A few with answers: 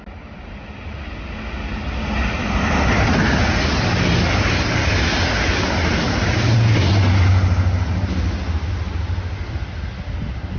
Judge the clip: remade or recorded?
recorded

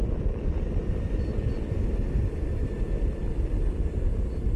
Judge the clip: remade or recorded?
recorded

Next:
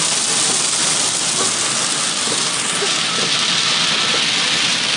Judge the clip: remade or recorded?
recorded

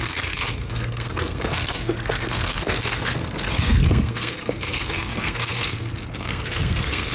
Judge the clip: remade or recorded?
remade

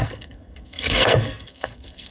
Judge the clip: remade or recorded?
remade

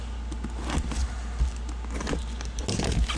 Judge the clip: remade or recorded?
recorded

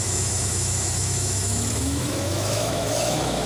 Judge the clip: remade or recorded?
remade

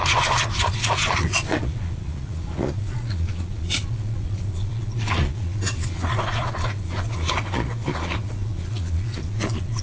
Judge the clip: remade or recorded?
remade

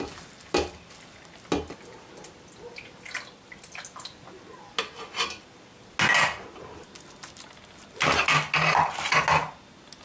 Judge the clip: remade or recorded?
recorded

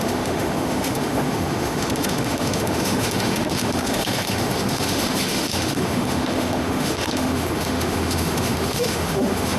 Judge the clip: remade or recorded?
remade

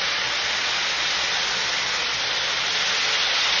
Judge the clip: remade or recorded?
recorded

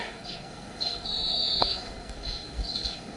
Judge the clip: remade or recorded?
remade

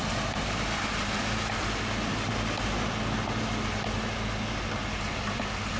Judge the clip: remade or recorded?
recorded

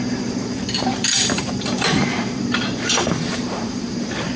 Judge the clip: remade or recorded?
remade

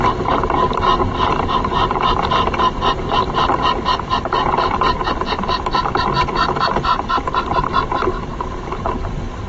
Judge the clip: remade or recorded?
remade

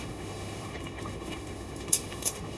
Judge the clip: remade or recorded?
remade